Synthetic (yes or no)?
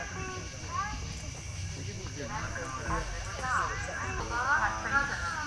no